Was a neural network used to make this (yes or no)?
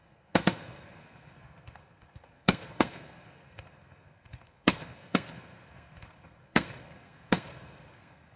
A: yes